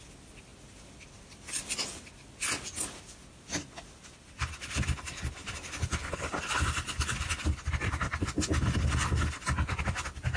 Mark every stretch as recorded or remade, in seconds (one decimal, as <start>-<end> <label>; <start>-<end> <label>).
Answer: 0.0-10.4 recorded